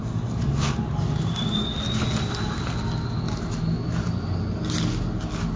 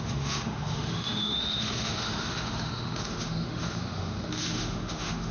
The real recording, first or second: first